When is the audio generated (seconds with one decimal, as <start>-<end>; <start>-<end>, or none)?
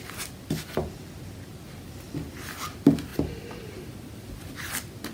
none